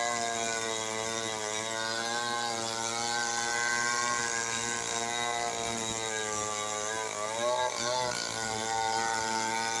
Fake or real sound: real